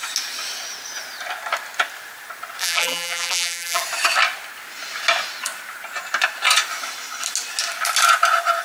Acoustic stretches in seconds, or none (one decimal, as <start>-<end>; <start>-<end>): 0.0-2.6; 3.8-8.6